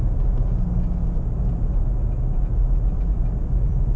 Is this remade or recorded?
recorded